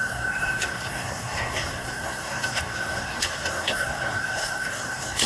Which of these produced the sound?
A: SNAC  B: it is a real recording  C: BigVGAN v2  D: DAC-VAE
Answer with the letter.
A